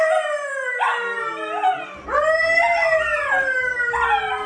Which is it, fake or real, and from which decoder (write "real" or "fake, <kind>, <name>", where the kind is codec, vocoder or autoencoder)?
real